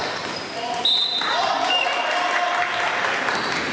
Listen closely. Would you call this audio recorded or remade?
recorded